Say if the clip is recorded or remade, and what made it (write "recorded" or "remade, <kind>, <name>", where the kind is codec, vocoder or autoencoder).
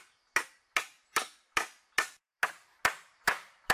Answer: recorded